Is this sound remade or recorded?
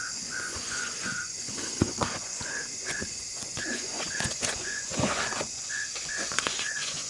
remade